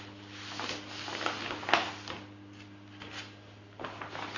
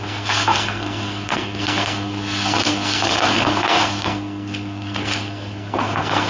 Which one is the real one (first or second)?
first